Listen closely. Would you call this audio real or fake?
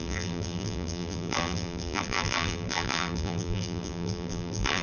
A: fake